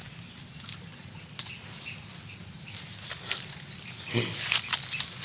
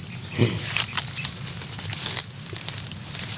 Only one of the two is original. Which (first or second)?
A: first